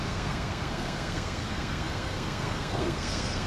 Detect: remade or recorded remade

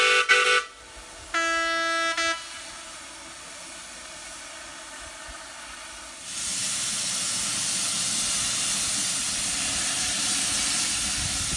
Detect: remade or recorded recorded